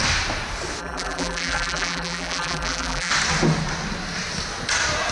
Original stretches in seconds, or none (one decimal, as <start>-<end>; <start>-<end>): 0.0-0.8; 3.1-5.1